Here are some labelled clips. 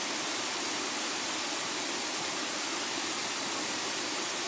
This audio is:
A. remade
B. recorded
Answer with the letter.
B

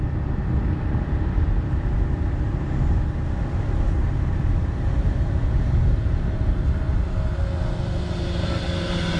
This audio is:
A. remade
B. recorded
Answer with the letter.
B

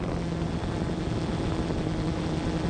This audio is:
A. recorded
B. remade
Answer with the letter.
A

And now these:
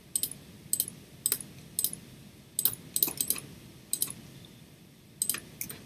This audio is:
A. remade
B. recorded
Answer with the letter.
B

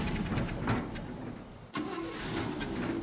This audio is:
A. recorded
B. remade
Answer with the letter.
A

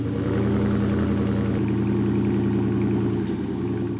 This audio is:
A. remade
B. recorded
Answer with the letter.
B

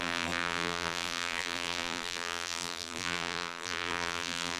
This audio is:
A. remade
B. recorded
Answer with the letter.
A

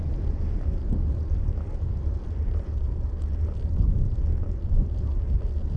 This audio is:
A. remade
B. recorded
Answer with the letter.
B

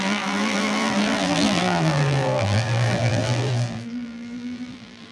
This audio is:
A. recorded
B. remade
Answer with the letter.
B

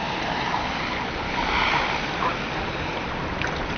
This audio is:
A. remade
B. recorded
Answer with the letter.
A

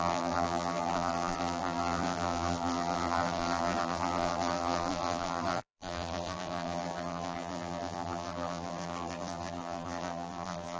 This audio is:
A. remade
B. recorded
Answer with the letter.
A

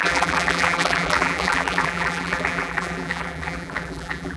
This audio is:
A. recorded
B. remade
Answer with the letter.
B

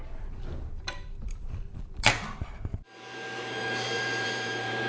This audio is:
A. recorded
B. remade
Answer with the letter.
B